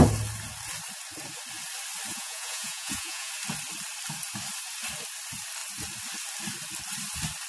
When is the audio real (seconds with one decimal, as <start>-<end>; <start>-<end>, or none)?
0.0-2.1; 3.3-7.5